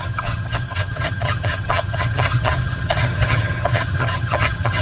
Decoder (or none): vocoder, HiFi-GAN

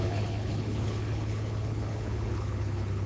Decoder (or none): codec, HILCodec